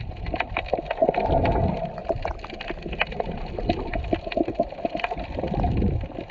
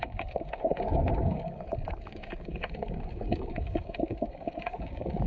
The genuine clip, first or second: first